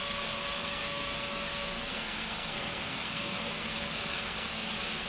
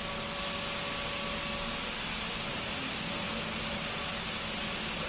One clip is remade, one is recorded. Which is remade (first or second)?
first